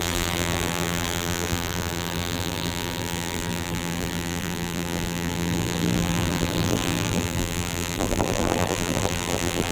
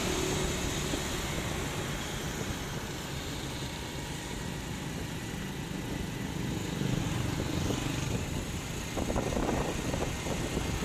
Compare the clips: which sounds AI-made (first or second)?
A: first